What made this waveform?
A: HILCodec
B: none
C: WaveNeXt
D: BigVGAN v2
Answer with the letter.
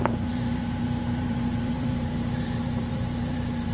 D